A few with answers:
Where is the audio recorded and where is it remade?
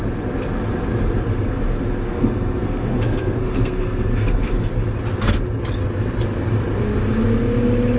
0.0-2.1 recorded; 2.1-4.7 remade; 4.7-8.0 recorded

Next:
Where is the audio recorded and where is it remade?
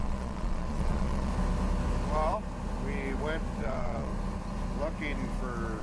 0.0-1.3 remade; 1.3-3.6 recorded; 3.6-4.1 remade; 4.1-5.8 recorded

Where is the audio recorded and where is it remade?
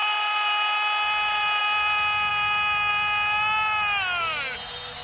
0.0-1.6 remade; 1.6-5.0 recorded